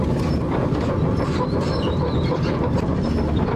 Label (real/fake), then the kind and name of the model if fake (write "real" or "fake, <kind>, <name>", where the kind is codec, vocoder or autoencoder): fake, vocoder, BigVGAN v2